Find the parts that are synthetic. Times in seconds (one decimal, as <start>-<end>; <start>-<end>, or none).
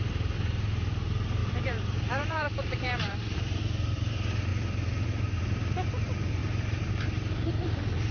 1.4-3.6; 6.4-7.5